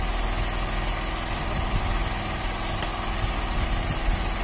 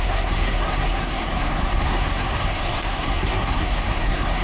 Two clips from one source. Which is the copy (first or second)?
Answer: second